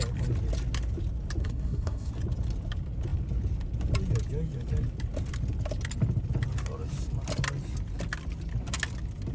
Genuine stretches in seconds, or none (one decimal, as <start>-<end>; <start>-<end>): 0.0-1.4; 2.1-9.3